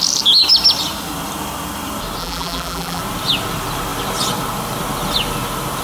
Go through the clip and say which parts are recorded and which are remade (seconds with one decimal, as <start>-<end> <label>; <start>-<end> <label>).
0.0-2.2 recorded; 2.2-3.0 remade; 3.0-5.8 recorded